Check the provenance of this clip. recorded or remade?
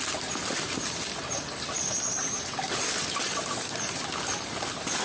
recorded